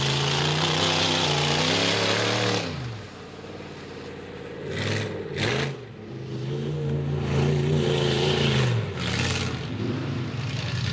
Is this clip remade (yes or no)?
no